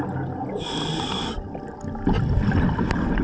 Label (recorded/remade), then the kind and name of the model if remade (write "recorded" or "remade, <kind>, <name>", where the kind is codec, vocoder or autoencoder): recorded